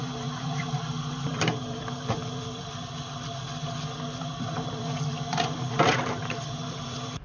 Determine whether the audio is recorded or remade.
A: remade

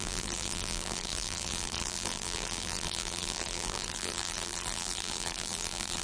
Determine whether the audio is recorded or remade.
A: remade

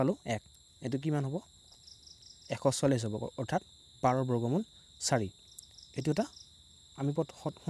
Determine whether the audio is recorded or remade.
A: remade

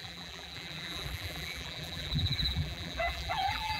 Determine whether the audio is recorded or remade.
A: remade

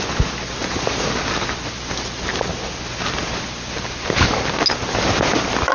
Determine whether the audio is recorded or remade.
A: recorded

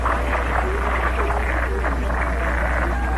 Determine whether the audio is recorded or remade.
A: recorded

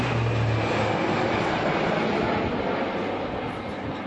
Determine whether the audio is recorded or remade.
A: recorded